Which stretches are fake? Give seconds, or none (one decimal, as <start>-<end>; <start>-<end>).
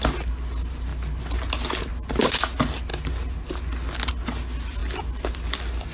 none